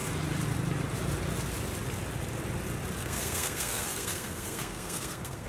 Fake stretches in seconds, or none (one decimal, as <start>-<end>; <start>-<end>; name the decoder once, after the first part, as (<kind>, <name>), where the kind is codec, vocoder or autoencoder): 3.0-5.5 (codec, SNAC)